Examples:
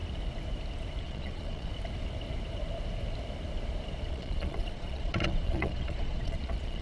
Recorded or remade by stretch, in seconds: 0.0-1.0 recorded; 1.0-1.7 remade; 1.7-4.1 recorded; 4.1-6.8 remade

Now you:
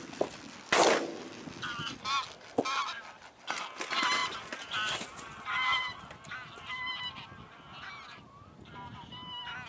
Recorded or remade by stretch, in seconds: 0.0-9.7 recorded